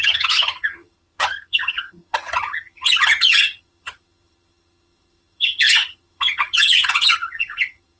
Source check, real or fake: fake